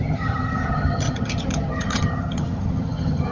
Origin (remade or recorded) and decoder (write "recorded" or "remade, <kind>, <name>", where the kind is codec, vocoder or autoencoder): remade, vocoder, HiFi-GAN